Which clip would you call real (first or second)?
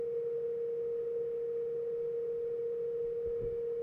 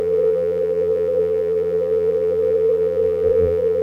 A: first